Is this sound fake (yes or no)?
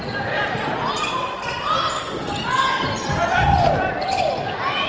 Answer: no